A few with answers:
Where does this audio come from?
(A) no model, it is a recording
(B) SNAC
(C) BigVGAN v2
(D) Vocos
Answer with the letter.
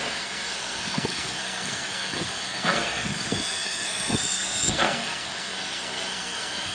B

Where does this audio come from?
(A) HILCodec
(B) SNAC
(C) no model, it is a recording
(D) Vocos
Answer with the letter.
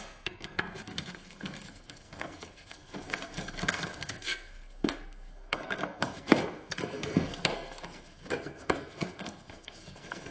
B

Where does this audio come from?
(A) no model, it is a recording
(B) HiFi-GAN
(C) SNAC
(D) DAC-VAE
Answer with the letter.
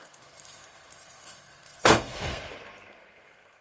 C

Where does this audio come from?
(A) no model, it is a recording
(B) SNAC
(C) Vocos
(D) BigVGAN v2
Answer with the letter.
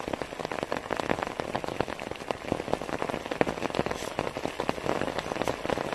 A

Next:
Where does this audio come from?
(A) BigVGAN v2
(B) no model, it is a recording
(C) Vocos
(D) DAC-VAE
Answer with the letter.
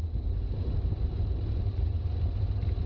B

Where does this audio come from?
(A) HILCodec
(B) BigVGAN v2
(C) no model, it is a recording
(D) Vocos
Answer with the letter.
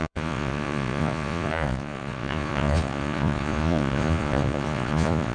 D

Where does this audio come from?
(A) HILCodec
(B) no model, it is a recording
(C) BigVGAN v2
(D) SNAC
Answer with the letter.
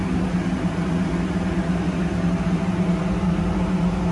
B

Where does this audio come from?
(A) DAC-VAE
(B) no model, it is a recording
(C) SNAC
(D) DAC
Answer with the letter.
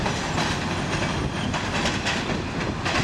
B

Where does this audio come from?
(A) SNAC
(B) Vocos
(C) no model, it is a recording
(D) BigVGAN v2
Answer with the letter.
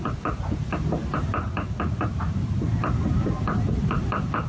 D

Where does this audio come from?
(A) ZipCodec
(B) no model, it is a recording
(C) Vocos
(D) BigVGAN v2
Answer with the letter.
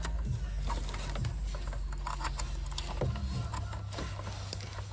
B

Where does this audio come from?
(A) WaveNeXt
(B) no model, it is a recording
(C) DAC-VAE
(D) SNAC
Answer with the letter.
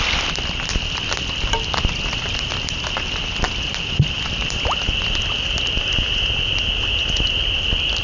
B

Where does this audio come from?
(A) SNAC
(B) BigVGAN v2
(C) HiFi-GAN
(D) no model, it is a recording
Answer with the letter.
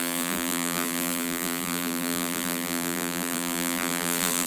B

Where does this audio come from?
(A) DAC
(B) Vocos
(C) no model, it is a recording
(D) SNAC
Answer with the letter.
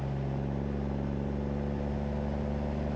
C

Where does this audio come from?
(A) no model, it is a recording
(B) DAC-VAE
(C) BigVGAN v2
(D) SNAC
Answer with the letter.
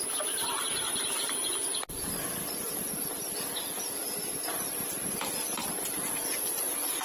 A